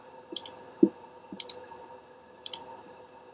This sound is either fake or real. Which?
fake